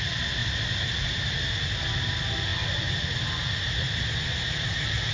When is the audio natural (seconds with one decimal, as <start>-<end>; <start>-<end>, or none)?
0.0-5.1